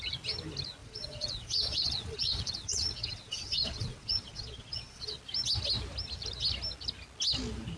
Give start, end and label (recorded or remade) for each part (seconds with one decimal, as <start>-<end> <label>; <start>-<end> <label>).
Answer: 0.0-0.8 recorded; 0.8-5.2 remade; 5.2-7.8 recorded